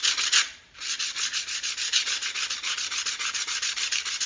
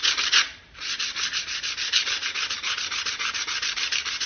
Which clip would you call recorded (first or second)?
second